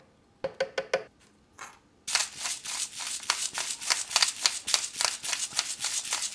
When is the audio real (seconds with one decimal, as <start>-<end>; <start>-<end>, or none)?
0.0-6.3